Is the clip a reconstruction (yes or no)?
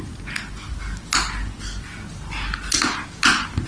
no